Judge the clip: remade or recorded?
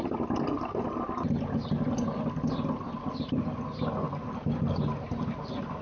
recorded